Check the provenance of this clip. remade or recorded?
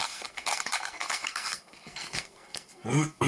remade